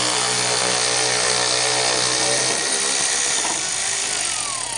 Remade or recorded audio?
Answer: recorded